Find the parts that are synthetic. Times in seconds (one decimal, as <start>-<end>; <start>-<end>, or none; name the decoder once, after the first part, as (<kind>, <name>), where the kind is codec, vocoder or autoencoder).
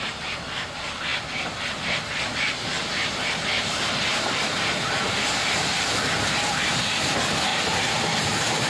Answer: 1.1-1.6 (vocoder, BigVGAN v2); 4.1-6.8; 7.5-8.7